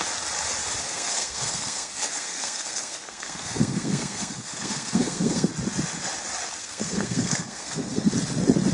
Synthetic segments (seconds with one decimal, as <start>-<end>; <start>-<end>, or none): 0.8-5.5; 6.6-8.1